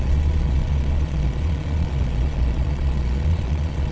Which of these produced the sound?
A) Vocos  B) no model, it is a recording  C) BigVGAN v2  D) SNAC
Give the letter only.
A